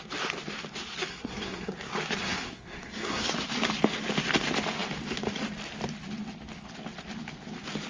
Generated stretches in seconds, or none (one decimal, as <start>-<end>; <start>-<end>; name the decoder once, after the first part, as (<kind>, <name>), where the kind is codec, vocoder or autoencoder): 1.1-1.7 (codec, SNAC); 2.2-3.3